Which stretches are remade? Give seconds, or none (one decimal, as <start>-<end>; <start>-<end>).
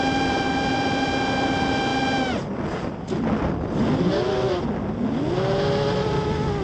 none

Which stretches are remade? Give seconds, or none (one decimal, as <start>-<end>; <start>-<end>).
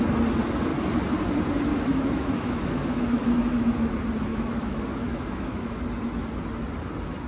1.7-3.9; 4.3-5.8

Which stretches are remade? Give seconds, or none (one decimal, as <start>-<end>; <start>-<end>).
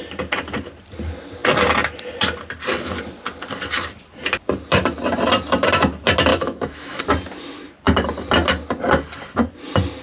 6.3-7.0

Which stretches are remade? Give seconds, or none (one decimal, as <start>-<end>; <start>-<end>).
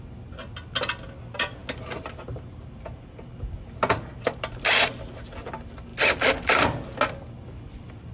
none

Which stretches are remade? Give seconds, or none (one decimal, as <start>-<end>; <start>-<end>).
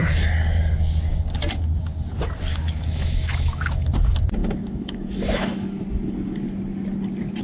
2.5-3.9; 4.4-5.8